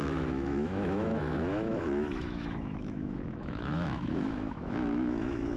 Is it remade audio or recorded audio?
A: remade